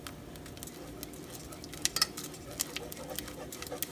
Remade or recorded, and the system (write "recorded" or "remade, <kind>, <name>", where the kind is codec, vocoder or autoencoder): recorded